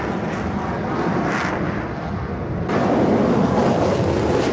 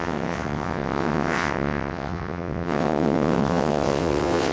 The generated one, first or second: second